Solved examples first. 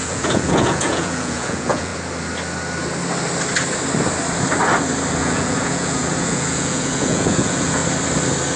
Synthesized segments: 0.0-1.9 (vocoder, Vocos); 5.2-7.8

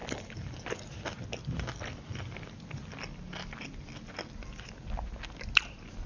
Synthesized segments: none

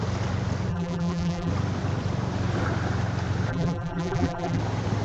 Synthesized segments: 0.7-1.5 (vocoder, BigVGAN v2); 3.5-4.6

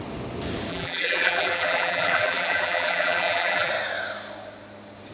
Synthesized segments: 0.7-3.7 (vocoder, BigVGAN v2)

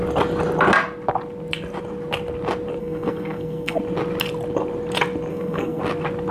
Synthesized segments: 2.8-3.8 (codec, SNAC); 5.3-5.8